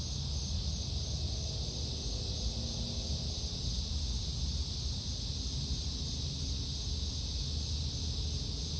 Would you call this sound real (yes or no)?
yes